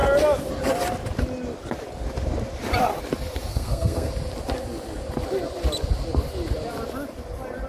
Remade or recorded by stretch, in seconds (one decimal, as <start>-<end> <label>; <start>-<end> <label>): 0.0-3.5 recorded; 3.5-4.1 remade; 4.1-7.7 recorded